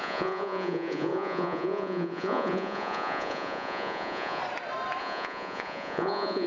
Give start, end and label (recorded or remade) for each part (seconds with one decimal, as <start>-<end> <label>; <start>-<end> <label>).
0.0-4.4 remade; 4.4-5.0 recorded; 5.0-6.5 remade